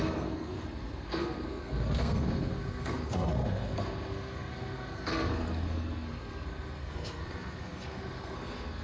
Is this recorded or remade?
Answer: remade